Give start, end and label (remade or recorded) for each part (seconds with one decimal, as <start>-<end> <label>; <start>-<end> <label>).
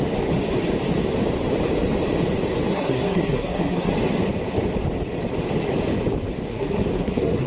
0.0-2.7 recorded; 2.7-3.9 remade; 3.9-6.5 recorded; 6.5-7.5 remade